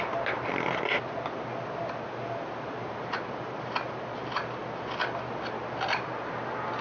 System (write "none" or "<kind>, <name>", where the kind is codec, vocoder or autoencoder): none